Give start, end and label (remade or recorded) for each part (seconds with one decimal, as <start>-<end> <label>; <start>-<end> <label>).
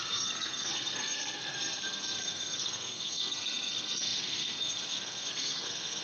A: 0.0-6.0 remade